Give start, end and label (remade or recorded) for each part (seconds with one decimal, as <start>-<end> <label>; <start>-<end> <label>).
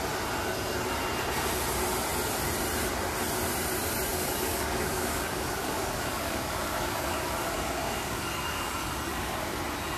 0.0-4.1 recorded; 4.1-8.7 remade; 8.7-9.1 recorded; 9.1-9.6 remade; 9.6-10.0 recorded